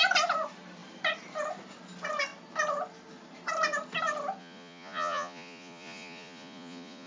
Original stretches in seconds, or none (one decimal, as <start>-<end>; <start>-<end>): 0.0-4.4